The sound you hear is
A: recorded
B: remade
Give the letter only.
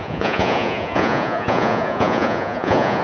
B